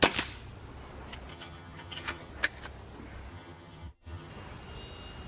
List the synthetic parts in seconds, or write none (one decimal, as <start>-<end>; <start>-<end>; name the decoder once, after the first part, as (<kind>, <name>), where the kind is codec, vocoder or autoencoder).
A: 1.3-2.3 (vocoder, HiFi-GAN); 3.3-4.3